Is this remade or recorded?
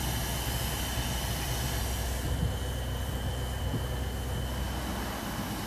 recorded